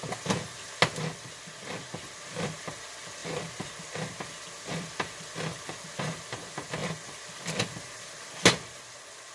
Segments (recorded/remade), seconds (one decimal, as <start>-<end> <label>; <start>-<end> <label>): 0.0-6.8 recorded; 6.8-8.2 remade; 8.2-9.3 recorded